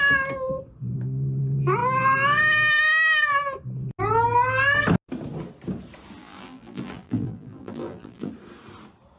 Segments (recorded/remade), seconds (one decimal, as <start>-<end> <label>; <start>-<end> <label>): 0.0-6.2 recorded; 6.2-8.3 remade; 8.3-9.2 recorded